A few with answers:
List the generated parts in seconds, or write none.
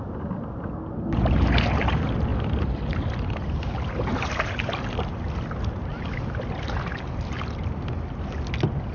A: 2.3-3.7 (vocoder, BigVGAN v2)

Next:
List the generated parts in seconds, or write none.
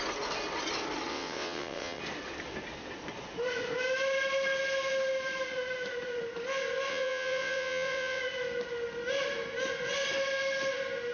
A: 1.1-2.0 (vocoder, WaveNeXt); 6.9-8.2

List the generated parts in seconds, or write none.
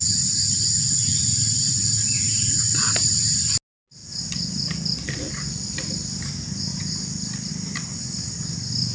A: 1.1-2.1 (vocoder, BigVGAN v2); 4.0-6.3; 6.7-7.5